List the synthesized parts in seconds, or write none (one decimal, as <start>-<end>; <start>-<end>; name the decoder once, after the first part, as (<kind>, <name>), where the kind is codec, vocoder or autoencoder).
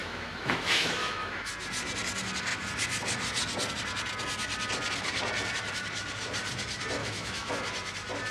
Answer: 0.0-1.5 (autoencoder, DAC-VAE); 7.0-7.5